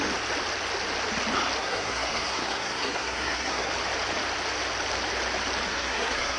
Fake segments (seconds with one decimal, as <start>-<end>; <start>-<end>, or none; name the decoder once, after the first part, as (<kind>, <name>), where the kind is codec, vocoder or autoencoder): 1.6-3.7 (codec, SNAC); 5.7-6.4